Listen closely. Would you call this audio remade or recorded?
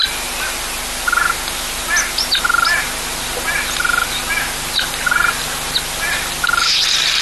recorded